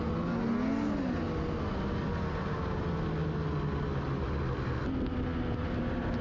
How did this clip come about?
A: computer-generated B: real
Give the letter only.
B